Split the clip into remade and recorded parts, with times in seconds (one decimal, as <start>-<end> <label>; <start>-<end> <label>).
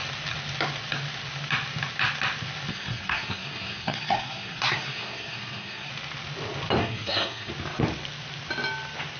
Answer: 0.0-2.7 recorded; 2.7-5.9 remade; 5.9-6.8 recorded; 6.8-7.5 remade; 7.5-9.2 recorded